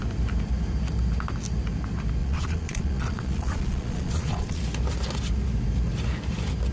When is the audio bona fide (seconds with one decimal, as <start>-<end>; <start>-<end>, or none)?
0.0-2.2; 4.6-6.7